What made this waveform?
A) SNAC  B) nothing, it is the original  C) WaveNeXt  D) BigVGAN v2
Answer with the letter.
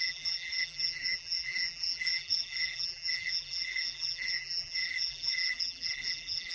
D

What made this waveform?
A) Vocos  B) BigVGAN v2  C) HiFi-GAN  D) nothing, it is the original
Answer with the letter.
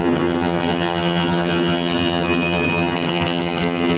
C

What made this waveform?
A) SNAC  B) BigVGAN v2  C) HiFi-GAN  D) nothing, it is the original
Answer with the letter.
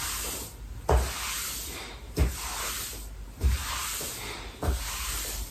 D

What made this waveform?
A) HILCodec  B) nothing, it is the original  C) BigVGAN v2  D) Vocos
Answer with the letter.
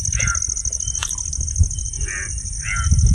B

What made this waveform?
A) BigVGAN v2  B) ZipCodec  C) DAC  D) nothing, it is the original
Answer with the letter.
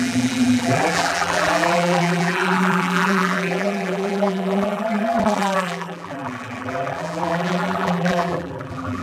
A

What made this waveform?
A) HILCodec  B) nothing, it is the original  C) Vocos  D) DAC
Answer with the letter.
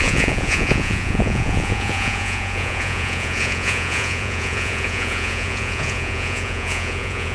C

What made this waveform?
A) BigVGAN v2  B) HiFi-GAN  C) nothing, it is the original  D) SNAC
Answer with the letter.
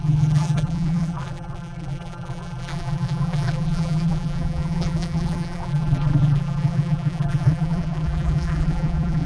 A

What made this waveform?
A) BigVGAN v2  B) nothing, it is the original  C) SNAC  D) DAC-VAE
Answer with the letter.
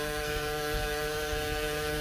C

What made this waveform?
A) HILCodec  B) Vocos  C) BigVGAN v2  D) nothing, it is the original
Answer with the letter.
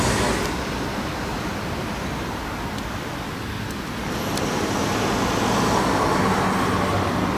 D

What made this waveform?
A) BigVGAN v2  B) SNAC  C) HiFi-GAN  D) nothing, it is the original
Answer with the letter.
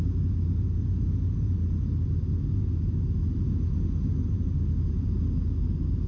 D